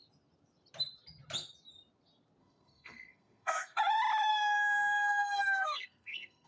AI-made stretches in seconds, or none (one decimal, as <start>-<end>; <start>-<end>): 2.4-3.8; 4.3-6.5